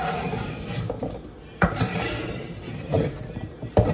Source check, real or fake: fake